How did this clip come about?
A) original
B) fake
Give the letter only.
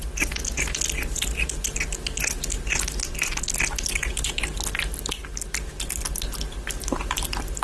A